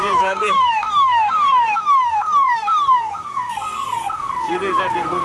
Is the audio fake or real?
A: fake